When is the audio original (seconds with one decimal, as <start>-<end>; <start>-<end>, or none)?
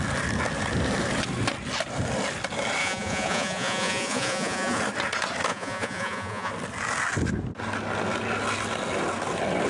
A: 0.0-2.8; 4.8-5.5; 6.5-9.7